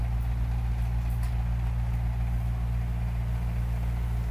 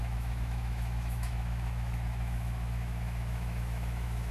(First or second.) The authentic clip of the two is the first